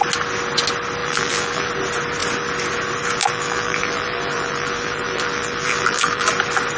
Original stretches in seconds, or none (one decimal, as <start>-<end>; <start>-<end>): 0.0-1.0; 1.7-3.2; 6.3-6.8